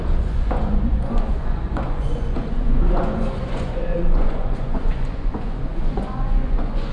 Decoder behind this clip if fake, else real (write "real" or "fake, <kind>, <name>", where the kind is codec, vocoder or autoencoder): fake, vocoder, Vocos